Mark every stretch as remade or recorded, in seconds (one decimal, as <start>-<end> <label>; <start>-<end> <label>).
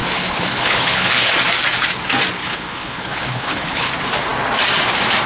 0.0-1.3 remade; 1.3-2.4 recorded; 2.4-3.9 remade; 3.9-5.3 recorded